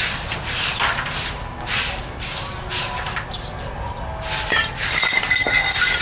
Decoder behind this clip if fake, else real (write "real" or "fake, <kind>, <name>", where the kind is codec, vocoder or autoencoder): real